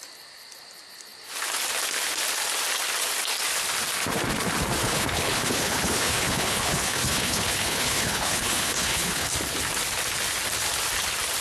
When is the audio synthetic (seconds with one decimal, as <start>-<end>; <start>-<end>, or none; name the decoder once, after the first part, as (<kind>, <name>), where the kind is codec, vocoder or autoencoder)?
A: 4.8-9.3 (codec, HILCodec)